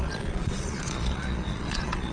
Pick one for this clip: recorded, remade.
remade